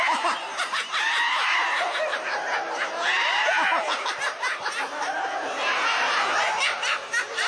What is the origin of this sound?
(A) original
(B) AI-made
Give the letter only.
A